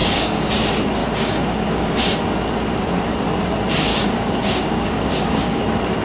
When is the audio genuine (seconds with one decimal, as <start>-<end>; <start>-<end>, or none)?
0.5-1.0; 2.0-3.9; 5.6-6.0